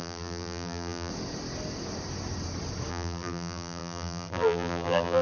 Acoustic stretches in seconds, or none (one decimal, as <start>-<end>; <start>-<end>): 1.1-2.9